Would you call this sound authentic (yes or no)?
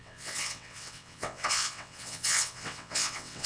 no